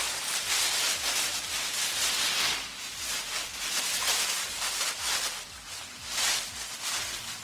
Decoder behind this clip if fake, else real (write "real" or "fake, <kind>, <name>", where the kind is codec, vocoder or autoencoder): real